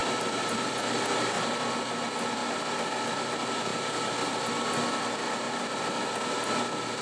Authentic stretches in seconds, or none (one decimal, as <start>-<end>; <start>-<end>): 0.7-7.0